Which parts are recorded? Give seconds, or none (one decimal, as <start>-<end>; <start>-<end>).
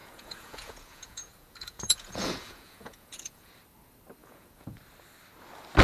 3.5-4.2; 4.8-5.8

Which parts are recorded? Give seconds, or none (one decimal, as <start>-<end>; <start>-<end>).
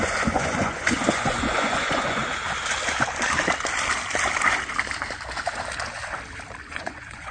2.2-6.6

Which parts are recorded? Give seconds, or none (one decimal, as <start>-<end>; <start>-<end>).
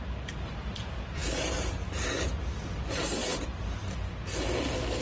0.0-5.0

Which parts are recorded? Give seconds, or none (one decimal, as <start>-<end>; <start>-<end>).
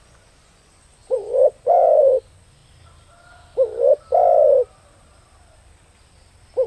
2.6-6.7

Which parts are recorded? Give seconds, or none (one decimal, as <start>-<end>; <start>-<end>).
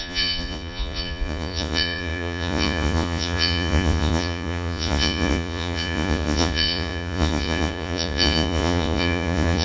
none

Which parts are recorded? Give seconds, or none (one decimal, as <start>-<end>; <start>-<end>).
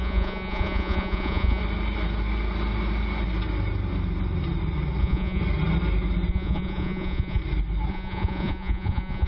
1.6-5.0; 5.4-6.3; 7.4-7.9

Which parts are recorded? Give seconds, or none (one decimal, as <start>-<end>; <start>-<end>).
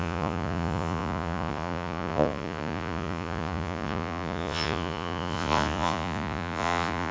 none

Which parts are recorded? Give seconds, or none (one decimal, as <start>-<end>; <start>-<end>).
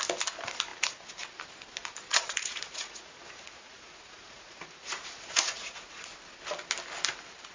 0.0-2.1; 6.1-7.5